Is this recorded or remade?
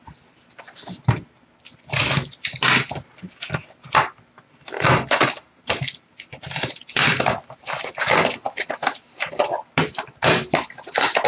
recorded